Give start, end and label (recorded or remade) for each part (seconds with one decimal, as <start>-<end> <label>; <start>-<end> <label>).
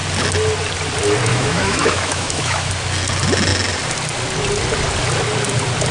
0.0-1.3 recorded; 1.3-2.7 remade; 2.7-5.9 recorded